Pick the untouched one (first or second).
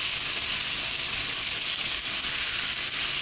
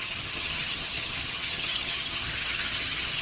first